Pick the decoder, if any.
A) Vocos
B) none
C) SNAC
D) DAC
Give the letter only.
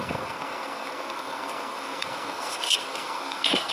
C